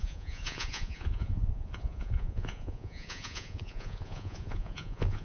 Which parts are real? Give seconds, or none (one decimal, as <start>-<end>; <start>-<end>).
none